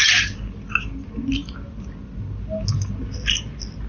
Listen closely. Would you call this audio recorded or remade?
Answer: recorded